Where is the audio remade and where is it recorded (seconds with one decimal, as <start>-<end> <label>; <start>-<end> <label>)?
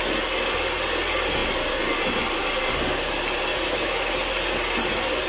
0.0-3.5 recorded; 3.5-4.1 remade; 4.1-5.3 recorded